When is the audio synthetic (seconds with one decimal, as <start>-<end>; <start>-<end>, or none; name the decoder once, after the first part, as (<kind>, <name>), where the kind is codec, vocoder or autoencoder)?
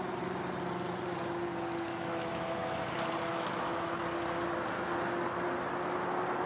1.9-2.9 (autoencoder, DAC-VAE); 3.3-4.0